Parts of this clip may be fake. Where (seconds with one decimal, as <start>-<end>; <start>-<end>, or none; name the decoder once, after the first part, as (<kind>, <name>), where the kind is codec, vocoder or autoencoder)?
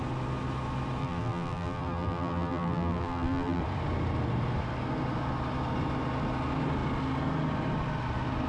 1.0-3.6 (vocoder, BigVGAN v2)